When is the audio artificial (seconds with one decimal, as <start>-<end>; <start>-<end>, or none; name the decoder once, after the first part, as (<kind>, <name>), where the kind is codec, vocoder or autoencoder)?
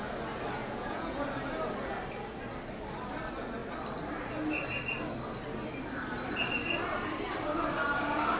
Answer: 0.6-1.2 (vocoder, Vocos)